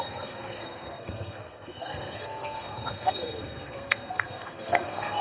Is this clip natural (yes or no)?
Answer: no